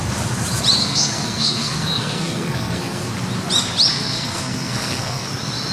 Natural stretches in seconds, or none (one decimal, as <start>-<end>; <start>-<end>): 0.0-0.8; 3.1-3.9; 5.3-5.7